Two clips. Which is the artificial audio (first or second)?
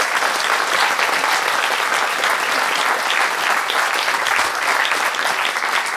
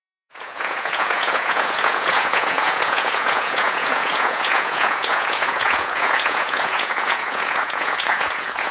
second